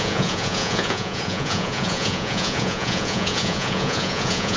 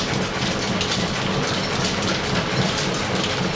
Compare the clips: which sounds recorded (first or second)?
second